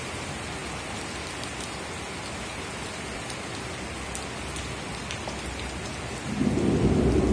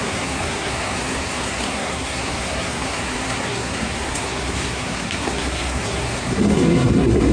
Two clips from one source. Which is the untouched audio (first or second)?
first